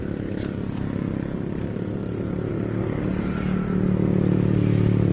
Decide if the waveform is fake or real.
real